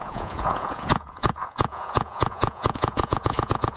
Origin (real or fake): fake